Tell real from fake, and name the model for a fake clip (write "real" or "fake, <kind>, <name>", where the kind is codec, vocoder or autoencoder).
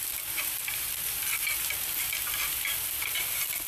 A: fake, vocoder, BigVGAN v2